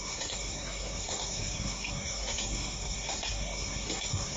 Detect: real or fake fake